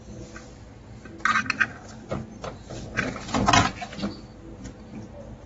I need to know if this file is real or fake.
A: real